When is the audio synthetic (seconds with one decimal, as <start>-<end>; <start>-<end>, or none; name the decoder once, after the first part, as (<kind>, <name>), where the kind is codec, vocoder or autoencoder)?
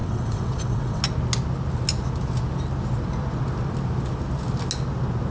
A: 0.0-1.0 (vocoder, WaveNeXt)